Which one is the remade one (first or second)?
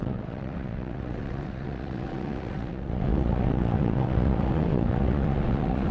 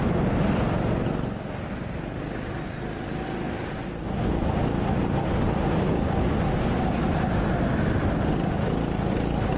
first